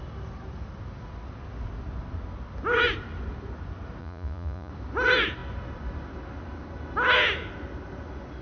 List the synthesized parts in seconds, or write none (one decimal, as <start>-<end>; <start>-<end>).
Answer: 4.0-4.7